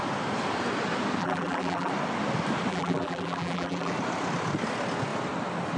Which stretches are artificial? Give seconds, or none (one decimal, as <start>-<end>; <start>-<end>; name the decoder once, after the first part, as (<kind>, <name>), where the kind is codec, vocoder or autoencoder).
1.2-1.9 (vocoder, BigVGAN v2); 2.7-3.9